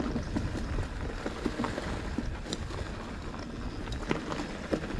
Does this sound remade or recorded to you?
recorded